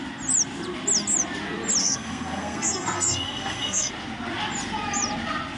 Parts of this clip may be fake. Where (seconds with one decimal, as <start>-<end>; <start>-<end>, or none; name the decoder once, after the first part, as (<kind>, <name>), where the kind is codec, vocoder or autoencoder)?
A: 1.8-3.9 (codec, SNAC)